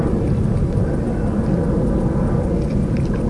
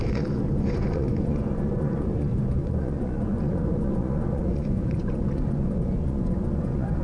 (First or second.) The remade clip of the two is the second